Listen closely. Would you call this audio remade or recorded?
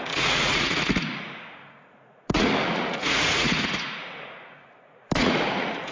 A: remade